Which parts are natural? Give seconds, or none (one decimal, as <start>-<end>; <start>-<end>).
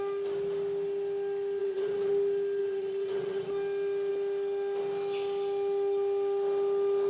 0.0-1.6; 2.1-2.6; 3.5-7.1